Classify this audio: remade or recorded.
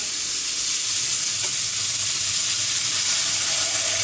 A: recorded